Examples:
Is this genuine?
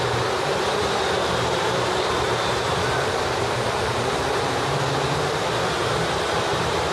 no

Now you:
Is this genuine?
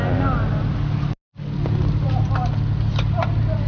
yes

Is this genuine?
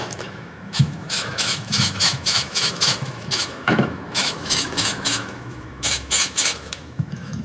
no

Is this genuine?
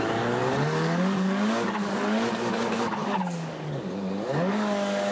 no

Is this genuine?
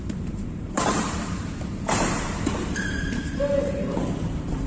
no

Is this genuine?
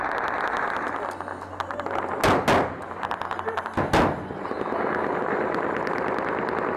yes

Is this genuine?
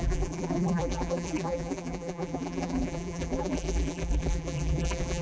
no